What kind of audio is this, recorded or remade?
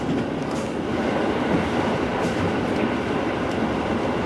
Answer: recorded